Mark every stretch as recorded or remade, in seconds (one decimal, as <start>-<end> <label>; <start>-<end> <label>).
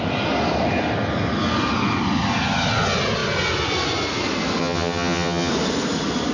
0.0-4.6 recorded; 4.6-5.5 remade; 5.5-6.3 recorded